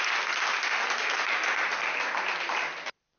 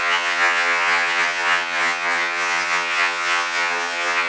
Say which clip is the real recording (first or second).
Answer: first